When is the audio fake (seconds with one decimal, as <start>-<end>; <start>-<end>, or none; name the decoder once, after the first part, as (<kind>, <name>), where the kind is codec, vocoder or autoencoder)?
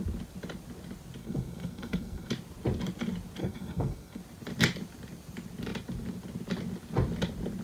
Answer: 1.2-2.3 (codec, SNAC); 3.4-4.2